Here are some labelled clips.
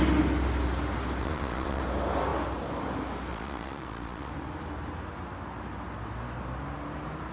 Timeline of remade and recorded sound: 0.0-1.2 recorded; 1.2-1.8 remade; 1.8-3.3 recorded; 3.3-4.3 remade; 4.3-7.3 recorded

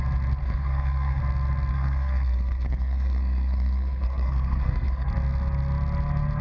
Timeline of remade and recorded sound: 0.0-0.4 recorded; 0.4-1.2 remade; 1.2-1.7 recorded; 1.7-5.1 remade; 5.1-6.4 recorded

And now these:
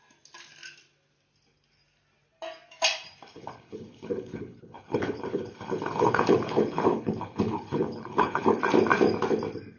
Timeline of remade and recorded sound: 0.0-3.3 recorded; 3.3-8.6 remade; 8.6-9.8 recorded